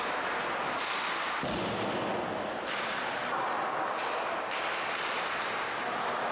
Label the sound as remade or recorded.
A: recorded